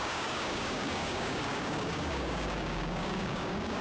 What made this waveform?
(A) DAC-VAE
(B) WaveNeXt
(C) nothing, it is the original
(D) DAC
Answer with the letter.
D